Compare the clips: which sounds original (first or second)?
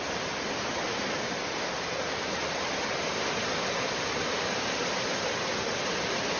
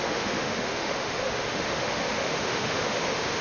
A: first